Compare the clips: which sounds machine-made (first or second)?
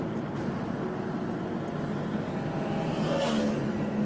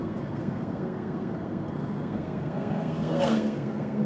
second